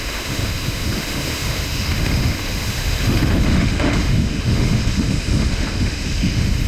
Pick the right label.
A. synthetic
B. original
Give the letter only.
A